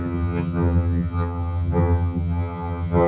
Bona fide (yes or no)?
no